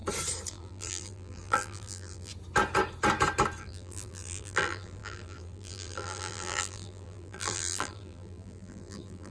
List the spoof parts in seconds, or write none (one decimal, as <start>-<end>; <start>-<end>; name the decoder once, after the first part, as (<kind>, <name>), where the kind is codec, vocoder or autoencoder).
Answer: 0.5-2.3 (vocoder, BigVGAN v2); 3.6-9.3